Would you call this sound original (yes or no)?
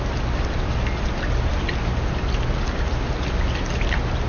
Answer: yes